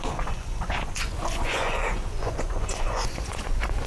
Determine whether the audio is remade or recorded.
remade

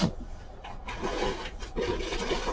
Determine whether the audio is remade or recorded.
remade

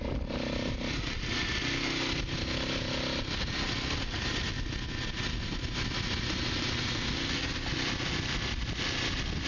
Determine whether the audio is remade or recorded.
recorded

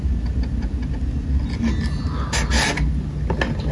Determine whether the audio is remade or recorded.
recorded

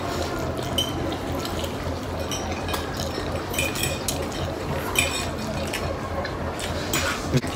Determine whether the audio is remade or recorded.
recorded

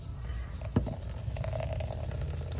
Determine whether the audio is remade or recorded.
recorded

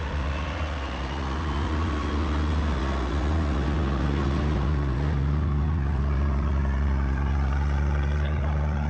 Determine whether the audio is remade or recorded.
remade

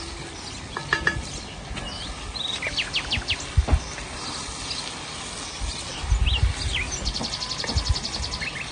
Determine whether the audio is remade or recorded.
recorded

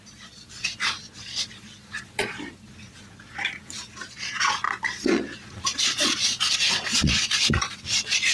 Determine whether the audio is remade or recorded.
remade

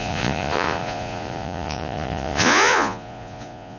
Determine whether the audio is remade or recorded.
remade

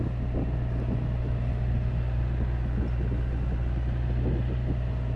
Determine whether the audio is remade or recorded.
recorded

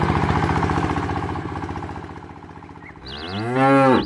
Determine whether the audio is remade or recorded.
recorded